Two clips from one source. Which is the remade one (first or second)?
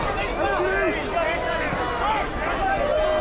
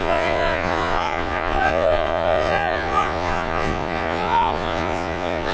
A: second